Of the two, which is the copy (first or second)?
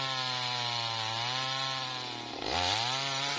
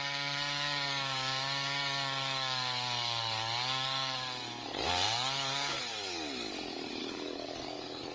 second